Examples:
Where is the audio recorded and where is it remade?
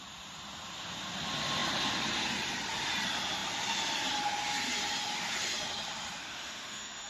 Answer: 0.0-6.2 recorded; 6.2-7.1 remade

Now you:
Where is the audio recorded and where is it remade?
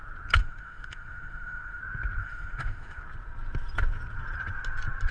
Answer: 0.0-0.4 recorded; 0.4-1.8 remade; 1.8-2.2 recorded; 2.2-3.0 remade; 3.0-5.1 recorded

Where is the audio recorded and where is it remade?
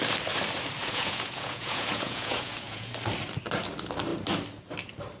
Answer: 0.0-0.8 recorded; 0.8-2.9 remade; 2.9-5.2 recorded